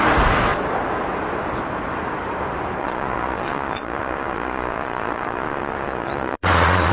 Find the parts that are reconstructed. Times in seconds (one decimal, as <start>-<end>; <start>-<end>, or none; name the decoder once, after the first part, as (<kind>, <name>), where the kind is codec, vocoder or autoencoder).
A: 2.8-6.9 (vocoder, Vocos)